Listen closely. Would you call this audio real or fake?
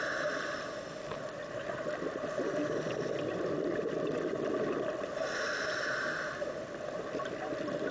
real